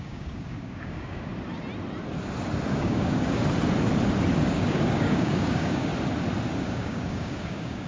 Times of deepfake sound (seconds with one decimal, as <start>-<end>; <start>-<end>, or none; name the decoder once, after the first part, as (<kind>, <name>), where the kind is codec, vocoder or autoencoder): 0.0-1.3 (codec, DAC); 2.7-3.4; 4.5-5.9; 6.6-7.9